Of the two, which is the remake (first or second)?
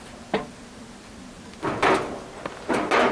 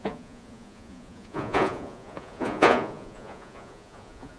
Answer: second